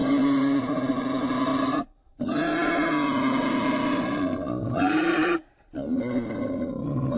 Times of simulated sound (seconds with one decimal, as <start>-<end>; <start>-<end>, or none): 0.0-0.9; 1.5-2.2; 5.2-6.0